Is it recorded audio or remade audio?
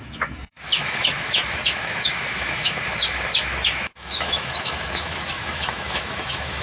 remade